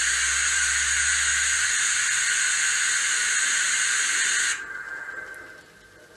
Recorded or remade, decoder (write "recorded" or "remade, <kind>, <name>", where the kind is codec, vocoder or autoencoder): recorded